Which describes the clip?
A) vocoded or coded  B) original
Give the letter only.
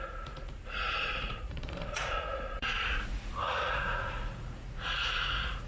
A